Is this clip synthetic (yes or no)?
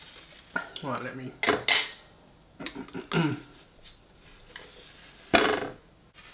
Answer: no